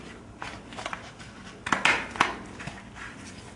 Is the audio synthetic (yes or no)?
no